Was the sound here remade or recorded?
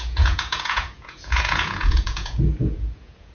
remade